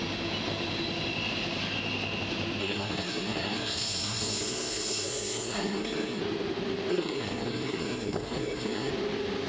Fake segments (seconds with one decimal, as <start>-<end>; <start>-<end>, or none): 2.6-6.2; 6.9-8.9